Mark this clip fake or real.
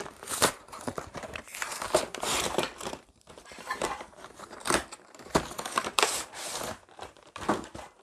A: fake